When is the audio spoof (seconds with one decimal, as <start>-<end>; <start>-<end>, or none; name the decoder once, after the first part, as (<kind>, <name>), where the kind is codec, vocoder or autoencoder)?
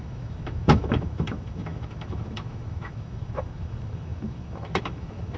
0.0-5.4 (autoencoder, DAC-VAE)